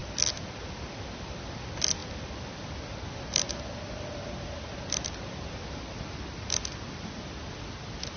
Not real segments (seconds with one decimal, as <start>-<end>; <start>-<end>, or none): none